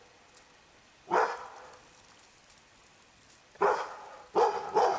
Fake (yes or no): no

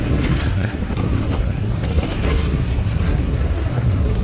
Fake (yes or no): yes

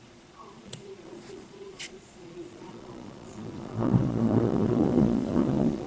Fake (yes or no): yes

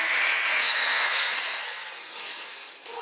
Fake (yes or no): yes